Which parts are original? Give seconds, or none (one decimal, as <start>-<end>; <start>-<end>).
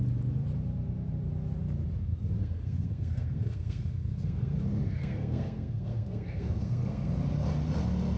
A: 0.0-2.4; 7.1-8.2